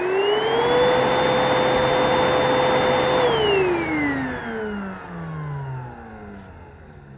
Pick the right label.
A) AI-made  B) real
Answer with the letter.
B